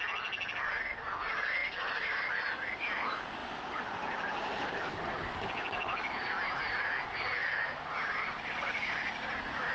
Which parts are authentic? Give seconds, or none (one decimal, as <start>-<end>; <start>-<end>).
0.0-9.7

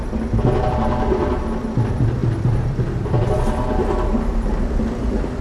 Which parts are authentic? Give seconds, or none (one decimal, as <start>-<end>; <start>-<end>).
0.0-5.4